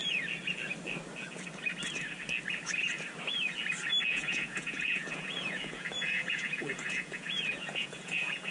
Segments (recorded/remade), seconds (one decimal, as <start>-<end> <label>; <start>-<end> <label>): 0.0-4.1 recorded; 4.1-8.5 remade